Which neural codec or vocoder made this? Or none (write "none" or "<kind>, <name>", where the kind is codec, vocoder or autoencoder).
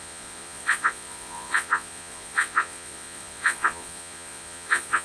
vocoder, Vocos